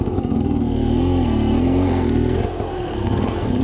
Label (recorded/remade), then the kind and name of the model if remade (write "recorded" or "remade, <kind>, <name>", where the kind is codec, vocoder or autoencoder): remade, codec, SNAC